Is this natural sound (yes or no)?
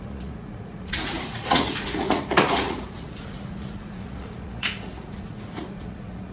no